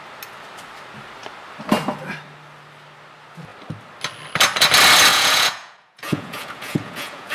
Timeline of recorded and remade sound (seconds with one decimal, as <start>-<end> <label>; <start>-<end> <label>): 0.0-5.1 recorded; 5.1-7.3 remade